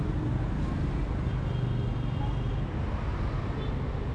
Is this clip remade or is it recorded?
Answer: recorded